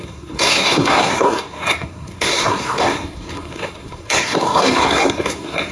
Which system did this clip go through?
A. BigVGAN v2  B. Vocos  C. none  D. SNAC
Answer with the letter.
D